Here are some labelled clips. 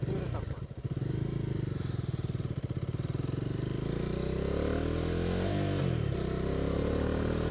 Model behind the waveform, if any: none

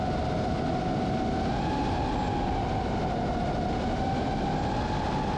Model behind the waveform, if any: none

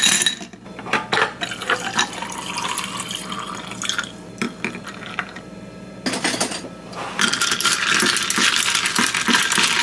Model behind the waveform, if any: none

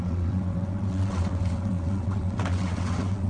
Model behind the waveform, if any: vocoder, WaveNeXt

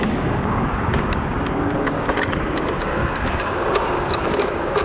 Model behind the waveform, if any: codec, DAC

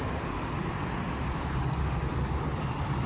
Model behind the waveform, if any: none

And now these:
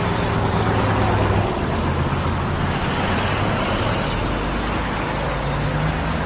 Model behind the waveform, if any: none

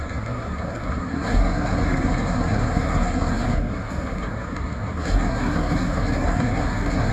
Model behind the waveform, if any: codec, SNAC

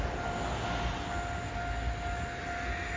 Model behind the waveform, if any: none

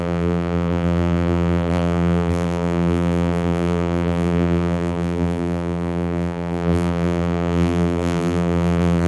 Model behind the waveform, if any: vocoder, BigVGAN v2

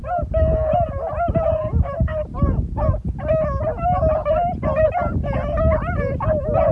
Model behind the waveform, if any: none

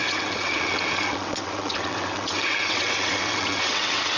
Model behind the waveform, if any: vocoder, WaveNeXt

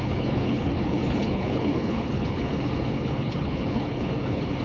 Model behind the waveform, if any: codec, HILCodec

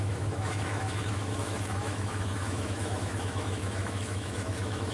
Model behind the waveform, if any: autoencoder, DAC-VAE